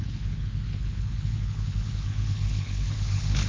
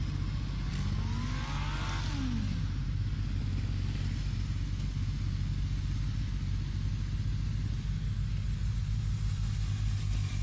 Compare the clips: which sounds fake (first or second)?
first